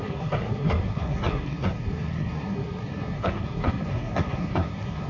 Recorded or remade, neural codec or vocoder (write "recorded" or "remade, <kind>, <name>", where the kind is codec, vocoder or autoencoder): remade, codec, SNAC